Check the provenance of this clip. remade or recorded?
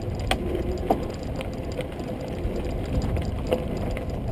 recorded